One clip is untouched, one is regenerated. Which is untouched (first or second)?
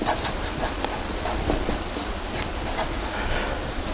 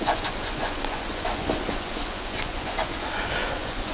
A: first